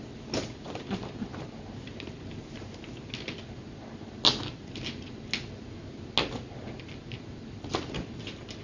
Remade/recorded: recorded